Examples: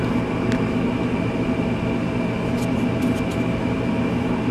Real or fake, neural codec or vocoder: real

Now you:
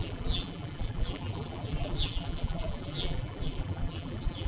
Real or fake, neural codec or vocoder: fake, vocoder, BigVGAN v2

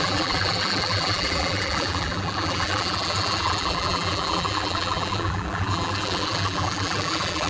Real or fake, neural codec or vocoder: fake, vocoder, BigVGAN v2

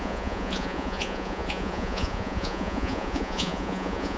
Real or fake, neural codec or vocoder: fake, vocoder, Vocos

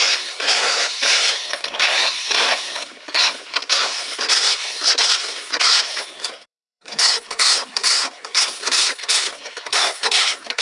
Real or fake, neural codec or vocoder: fake, codec, SNAC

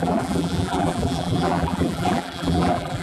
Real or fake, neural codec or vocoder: fake, vocoder, BigVGAN v2